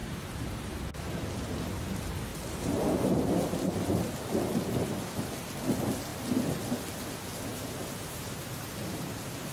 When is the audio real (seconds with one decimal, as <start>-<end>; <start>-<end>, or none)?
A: 0.7-2.3; 3.5-7.5